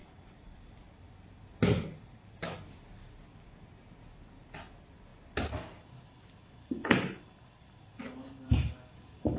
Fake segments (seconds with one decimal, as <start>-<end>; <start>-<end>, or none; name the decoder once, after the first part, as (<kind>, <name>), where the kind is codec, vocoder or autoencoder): 0.0-0.8 (vocoder, BigVGAN v2); 1.9-2.6